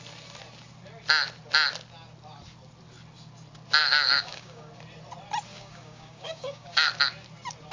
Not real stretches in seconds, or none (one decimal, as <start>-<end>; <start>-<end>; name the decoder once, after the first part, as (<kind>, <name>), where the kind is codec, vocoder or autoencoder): 3.8-4.7 (codec, DAC); 5.5-6.9